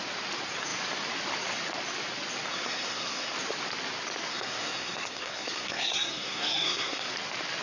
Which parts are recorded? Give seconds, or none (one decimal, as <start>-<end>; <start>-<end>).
0.0-2.5; 3.3-4.3; 7.1-7.6